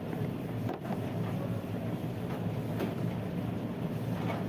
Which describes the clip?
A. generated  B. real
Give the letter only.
B